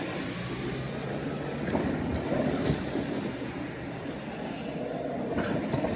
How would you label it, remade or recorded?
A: recorded